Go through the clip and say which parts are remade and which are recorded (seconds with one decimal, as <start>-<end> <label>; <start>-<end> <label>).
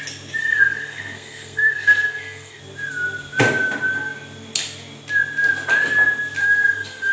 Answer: 0.0-0.4 recorded; 0.4-2.6 remade; 2.6-6.4 recorded; 6.4-7.1 remade